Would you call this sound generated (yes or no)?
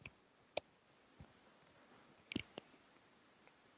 no